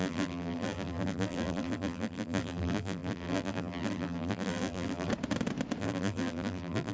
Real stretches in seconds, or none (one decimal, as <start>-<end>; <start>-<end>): 5.1-5.8